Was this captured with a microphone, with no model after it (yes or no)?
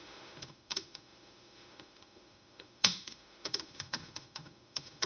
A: no